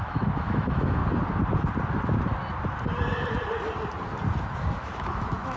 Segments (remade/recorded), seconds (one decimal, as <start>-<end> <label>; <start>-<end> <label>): 0.0-1.0 remade; 1.0-4.4 recorded; 4.4-5.6 remade